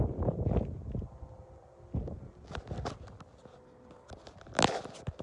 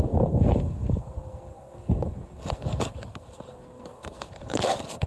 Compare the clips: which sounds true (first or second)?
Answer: first